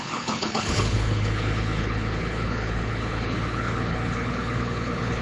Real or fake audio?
fake